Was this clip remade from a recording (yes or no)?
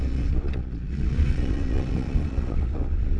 yes